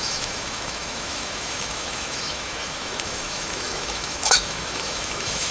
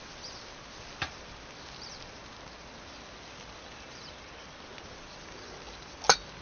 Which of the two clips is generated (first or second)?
first